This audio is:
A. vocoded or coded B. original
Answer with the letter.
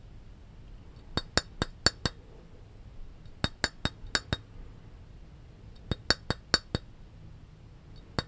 B